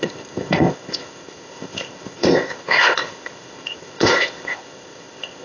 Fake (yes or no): yes